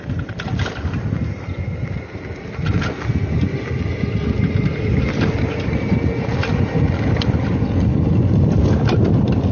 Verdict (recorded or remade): recorded